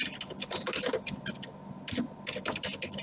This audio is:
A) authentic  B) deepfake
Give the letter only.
A